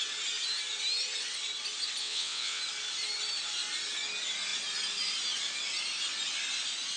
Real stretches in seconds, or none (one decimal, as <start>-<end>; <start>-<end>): 0.0-2.0; 2.6-7.0